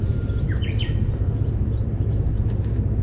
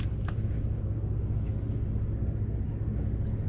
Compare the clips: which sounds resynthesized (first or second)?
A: first